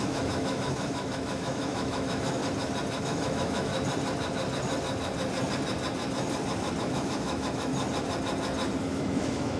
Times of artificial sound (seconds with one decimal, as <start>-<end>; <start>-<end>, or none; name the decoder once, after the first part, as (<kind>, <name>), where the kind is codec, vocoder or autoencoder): 0.0-2.4 (autoencoder, DAC-VAE); 3.0-3.7; 6.8-7.7; 8.8-9.6